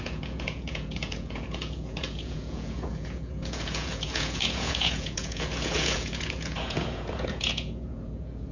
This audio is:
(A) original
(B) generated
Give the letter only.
B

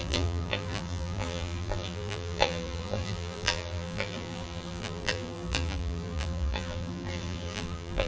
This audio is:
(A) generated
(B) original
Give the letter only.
A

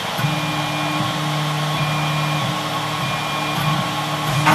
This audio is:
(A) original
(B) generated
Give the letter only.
A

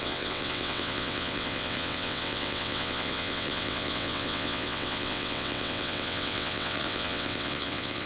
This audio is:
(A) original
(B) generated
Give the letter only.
B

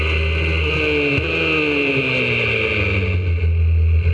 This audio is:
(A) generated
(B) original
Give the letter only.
B